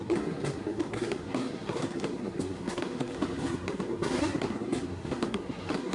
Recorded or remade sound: remade